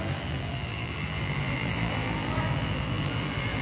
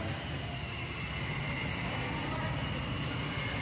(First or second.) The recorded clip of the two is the second